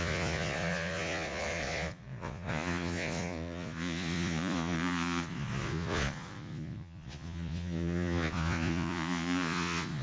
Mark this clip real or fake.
fake